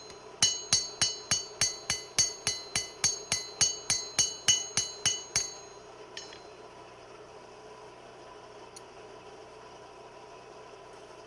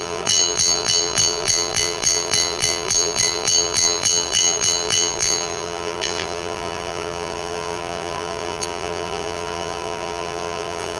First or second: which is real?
first